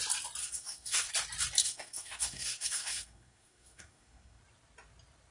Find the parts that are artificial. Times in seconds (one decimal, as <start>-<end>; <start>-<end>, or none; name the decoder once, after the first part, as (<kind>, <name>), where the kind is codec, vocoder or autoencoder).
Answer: 0.4-1.1 (codec, SNAC); 1.6-4.4